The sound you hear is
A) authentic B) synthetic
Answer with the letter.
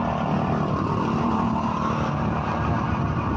A